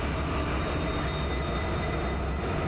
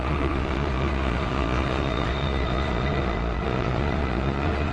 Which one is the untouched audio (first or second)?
first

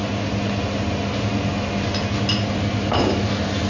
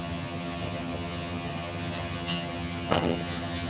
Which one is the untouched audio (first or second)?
first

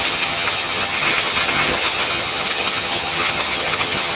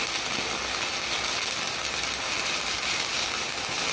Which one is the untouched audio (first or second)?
second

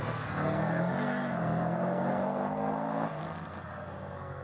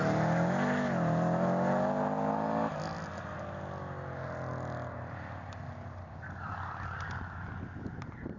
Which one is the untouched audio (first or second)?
second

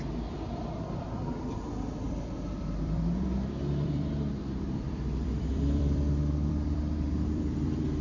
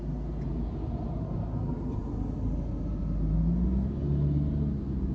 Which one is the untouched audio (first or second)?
second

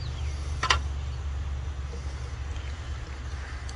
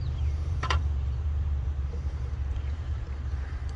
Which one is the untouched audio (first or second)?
first